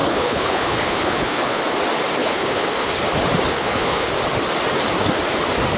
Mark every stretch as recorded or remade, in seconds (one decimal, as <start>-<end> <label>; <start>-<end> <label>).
0.0-1.6 remade; 1.6-2.2 recorded; 2.2-2.9 remade; 2.9-3.5 recorded; 3.5-4.1 remade; 4.1-5.8 recorded